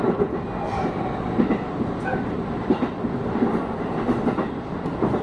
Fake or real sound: fake